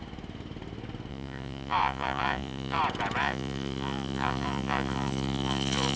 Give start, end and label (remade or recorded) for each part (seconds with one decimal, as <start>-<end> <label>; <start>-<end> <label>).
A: 0.0-1.1 recorded; 1.1-2.8 remade; 2.8-3.2 recorded; 3.2-6.0 remade